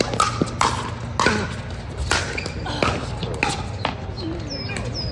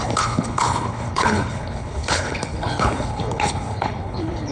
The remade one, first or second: second